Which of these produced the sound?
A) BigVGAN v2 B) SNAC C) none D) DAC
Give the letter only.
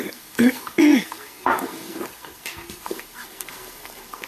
B